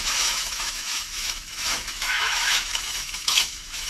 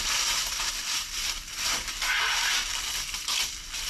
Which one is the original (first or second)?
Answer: second